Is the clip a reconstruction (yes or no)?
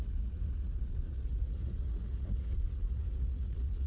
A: yes